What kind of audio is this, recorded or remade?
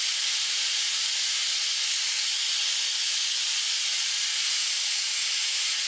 recorded